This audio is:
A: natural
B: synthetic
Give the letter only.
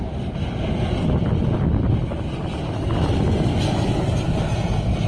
A